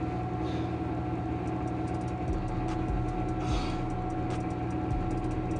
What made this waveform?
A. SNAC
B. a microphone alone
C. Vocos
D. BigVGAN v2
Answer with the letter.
B